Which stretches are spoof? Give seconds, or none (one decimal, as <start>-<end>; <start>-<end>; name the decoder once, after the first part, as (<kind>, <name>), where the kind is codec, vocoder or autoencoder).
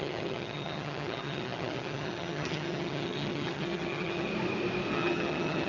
0.0-4.3 (vocoder, HiFi-GAN); 4.9-5.7